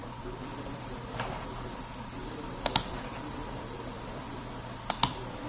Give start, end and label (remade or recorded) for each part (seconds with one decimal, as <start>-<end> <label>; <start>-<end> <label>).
0.0-2.2 recorded; 2.2-4.5 remade; 4.5-5.5 recorded